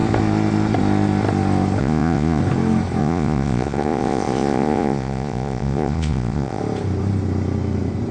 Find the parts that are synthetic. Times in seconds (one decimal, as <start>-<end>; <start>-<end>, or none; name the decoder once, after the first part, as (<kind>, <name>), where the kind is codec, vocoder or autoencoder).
1.8-2.4 (vocoder, Vocos); 3.0-6.6

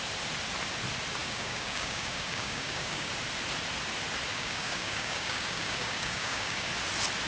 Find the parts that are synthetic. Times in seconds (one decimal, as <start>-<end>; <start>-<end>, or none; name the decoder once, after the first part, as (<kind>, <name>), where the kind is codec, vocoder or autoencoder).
1.2-3.1 (codec, DAC); 4.3-6.7

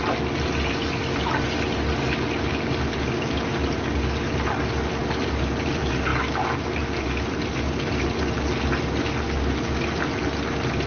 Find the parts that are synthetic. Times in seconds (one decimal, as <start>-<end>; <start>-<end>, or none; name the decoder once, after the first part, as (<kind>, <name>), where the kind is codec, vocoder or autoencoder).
none

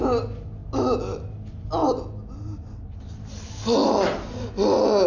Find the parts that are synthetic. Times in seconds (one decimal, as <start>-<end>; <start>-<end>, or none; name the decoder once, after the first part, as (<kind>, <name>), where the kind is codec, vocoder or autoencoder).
none